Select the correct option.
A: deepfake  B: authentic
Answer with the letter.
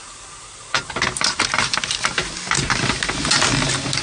B